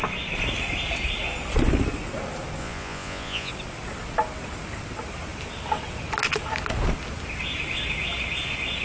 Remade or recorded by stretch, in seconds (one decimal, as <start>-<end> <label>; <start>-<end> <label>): 0.0-2.6 recorded; 2.6-3.5 remade; 3.5-8.8 recorded

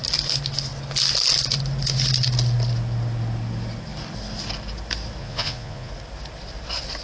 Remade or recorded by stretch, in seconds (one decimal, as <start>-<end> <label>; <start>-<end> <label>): 0.0-5.2 recorded; 5.2-5.9 remade; 5.9-7.0 recorded

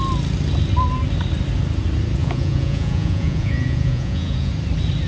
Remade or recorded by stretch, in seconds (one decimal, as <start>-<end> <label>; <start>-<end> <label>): 0.0-2.2 recorded; 2.2-4.5 remade; 4.5-5.1 recorded

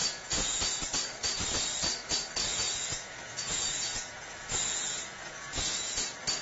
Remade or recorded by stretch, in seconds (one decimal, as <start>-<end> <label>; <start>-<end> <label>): 0.0-0.6 remade; 0.6-2.5 recorded; 2.5-6.0 remade; 6.0-6.4 recorded

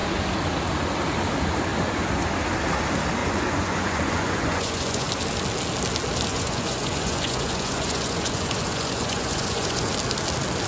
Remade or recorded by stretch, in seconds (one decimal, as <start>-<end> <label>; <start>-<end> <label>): 0.0-3.2 recorded; 3.2-5.1 remade; 5.1-6.3 recorded; 6.3-9.9 remade; 9.9-10.7 recorded

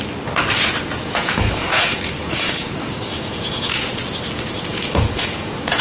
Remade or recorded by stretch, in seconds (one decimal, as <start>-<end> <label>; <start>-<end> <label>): 0.0-0.9 recorded; 0.9-2.7 remade; 2.7-3.1 recorded; 3.1-4.0 remade; 4.0-4.7 recorded; 4.7-5.8 remade